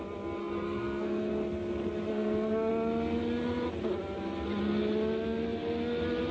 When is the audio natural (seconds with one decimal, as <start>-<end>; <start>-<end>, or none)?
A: 0.0-0.4; 1.3-2.1; 2.7-6.3